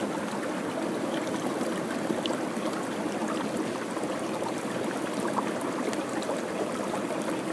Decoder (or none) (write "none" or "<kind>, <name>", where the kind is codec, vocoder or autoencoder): none